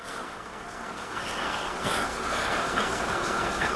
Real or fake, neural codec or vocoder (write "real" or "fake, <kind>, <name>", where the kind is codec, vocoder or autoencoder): fake, codec, SNAC